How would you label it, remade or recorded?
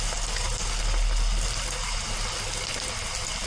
recorded